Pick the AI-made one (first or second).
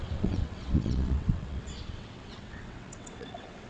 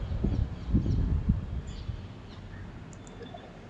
first